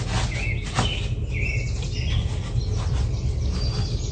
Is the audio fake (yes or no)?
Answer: no